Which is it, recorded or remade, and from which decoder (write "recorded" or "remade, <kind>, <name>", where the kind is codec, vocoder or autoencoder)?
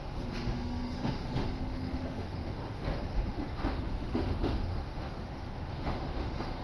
remade, autoencoder, DAC-VAE